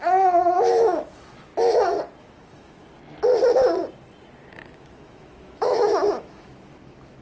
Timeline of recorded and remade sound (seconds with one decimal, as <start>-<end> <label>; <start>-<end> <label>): 0.0-1.5 remade; 1.5-2.2 recorded; 2.2-2.8 remade; 2.8-4.5 recorded; 4.5-7.2 remade